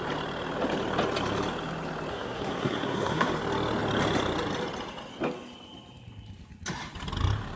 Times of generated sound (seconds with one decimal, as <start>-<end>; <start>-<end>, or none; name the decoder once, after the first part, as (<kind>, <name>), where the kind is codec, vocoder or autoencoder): 2.1-3.3 (codec, SNAC)